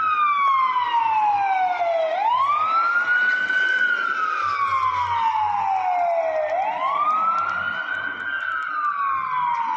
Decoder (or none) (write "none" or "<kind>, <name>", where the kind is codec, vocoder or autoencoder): none